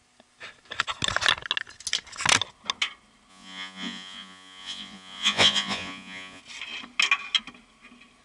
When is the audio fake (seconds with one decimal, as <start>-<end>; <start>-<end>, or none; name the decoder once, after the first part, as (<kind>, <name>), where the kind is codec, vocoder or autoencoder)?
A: 3.3-6.4 (vocoder, Vocos)